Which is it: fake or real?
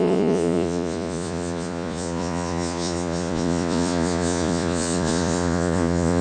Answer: fake